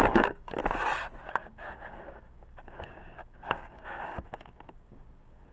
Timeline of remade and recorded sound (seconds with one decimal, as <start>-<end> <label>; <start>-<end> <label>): 0.0-0.6 remade; 0.6-1.3 recorded; 1.3-5.5 remade